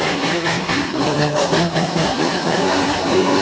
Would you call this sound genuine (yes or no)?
no